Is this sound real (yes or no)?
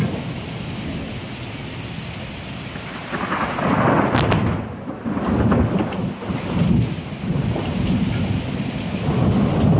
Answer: yes